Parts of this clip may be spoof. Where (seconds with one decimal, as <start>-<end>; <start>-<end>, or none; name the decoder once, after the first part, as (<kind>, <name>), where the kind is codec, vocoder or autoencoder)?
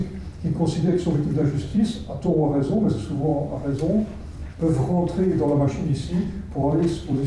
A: 0.8-3.3 (vocoder, BigVGAN v2); 4.0-4.4; 5.9-7.3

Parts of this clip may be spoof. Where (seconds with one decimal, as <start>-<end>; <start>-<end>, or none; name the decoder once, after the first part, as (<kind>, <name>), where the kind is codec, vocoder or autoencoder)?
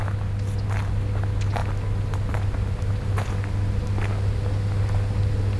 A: none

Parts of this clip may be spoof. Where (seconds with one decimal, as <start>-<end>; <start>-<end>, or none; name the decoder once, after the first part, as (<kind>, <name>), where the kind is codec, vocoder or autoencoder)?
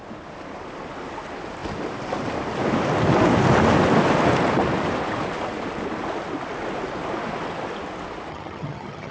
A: 8.3-9.1 (vocoder, HiFi-GAN)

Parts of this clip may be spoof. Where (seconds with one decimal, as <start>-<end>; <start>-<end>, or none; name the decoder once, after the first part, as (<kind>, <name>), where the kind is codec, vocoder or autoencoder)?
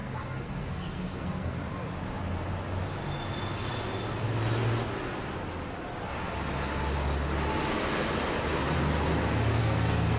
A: 0.0-1.6 (codec, SNAC); 9.6-10.2